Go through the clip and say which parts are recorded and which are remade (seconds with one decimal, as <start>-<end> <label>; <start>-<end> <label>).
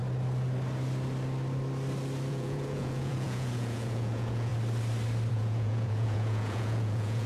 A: 0.0-2.3 recorded; 2.3-4.5 remade; 4.5-5.3 recorded; 5.3-7.3 remade